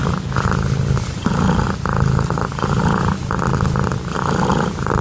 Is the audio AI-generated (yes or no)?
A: no